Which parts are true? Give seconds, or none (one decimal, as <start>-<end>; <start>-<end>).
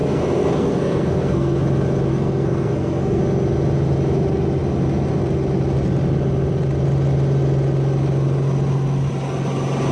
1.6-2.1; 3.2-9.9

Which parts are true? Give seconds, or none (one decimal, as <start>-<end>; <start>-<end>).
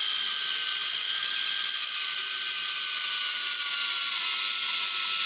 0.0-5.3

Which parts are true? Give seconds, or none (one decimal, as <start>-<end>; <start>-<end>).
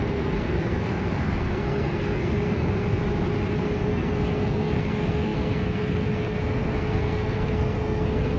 3.0-3.6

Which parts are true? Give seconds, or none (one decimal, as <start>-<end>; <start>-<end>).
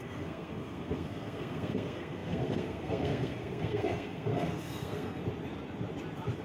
5.2-6.4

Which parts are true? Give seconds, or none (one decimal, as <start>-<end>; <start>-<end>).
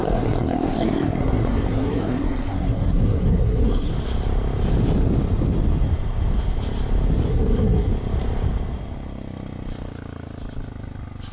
3.9-7.3; 7.9-11.3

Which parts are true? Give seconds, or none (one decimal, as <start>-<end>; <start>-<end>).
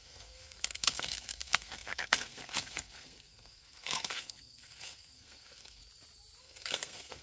5.8-6.4